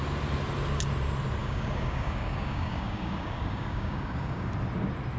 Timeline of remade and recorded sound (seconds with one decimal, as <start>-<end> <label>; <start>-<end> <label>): 0.0-1.4 recorded; 1.4-4.5 remade; 4.5-5.2 recorded